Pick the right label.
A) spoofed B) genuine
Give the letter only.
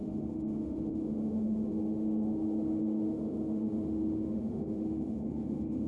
A